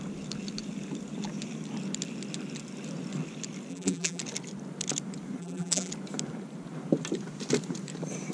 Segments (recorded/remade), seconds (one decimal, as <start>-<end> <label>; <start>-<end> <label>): 0.0-3.7 recorded; 3.7-4.2 remade; 4.2-5.4 recorded; 5.4-5.9 remade; 5.9-8.3 recorded